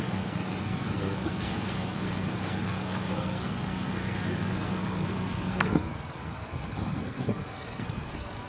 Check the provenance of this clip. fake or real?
fake